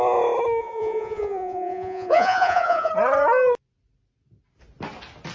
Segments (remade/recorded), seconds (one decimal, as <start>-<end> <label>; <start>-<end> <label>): 0.0-0.6 recorded; 0.6-2.9 remade; 2.9-5.3 recorded